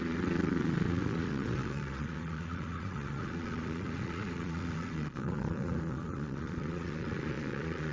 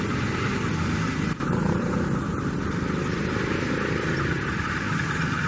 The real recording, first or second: second